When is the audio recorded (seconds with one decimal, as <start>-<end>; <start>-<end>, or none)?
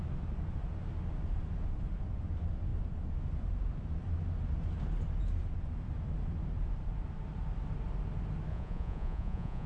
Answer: 0.0-8.5